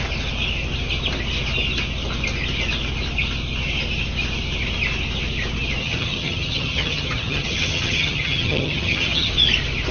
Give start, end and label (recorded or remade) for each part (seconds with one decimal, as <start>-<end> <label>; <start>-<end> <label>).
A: 0.0-5.8 recorded; 5.8-9.3 remade; 9.3-9.9 recorded